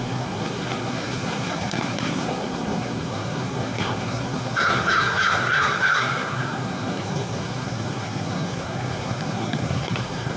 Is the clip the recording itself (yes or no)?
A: no